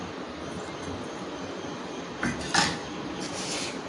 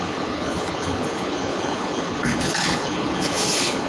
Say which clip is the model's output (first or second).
second